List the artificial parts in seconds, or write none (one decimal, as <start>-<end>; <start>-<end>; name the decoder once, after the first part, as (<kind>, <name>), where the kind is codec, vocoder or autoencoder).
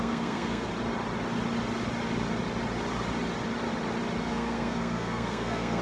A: 0.0-0.7 (codec, SNAC); 4.2-5.8